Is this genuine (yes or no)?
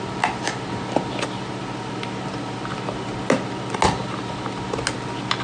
yes